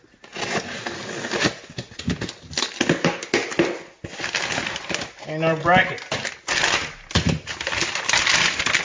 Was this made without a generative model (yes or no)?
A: yes